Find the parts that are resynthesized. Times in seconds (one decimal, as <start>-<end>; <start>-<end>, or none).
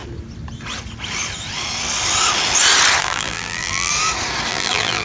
3.0-3.9; 4.5-5.0